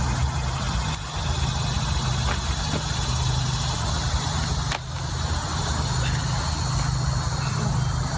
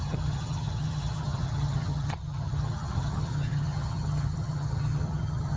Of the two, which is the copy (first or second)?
second